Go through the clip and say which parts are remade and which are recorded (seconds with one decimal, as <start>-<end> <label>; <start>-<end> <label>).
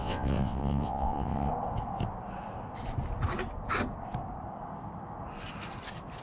0.0-1.5 remade; 1.5-6.2 recorded